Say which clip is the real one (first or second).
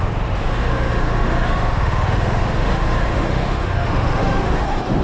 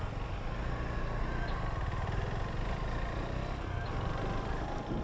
second